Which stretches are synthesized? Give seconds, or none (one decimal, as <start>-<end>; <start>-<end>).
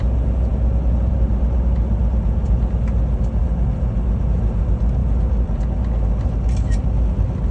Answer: none